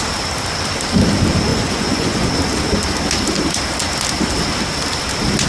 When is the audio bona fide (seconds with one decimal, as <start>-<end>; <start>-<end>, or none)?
0.0-1.5; 2.3-5.5

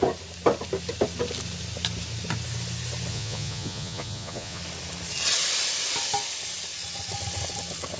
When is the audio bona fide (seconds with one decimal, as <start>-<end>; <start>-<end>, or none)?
0.0-3.1; 4.6-8.0

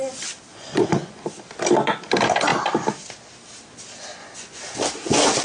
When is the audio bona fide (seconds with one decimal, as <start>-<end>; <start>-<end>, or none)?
0.0-0.5; 1.2-4.2; 4.8-5.4

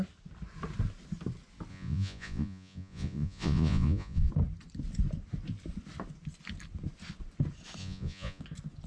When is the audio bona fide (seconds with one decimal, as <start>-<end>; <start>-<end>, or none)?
0.0-1.7; 4.3-7.8; 8.4-8.9

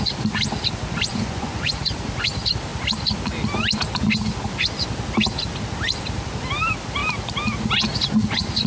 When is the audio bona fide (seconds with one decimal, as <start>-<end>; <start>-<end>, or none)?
0.0-1.1; 1.8-8.7

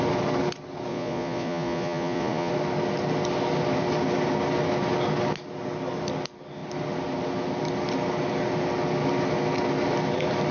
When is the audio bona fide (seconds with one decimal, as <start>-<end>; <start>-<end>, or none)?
0.0-0.9; 2.5-10.5

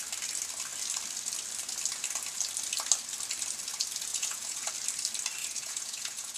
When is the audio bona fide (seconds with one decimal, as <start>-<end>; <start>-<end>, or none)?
0.0-4.1; 4.7-5.4

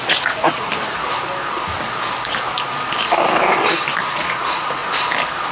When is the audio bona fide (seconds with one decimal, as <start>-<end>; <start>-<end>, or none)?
0.7-4.0; 4.8-5.5